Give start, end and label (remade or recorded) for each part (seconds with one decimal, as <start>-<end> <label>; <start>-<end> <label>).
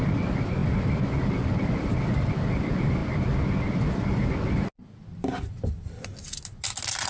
0.0-7.1 recorded